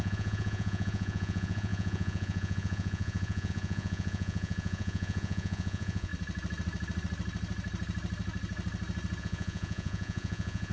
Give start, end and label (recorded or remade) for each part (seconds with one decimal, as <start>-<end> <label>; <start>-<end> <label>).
0.0-6.1 remade; 6.1-9.2 recorded; 9.2-10.7 remade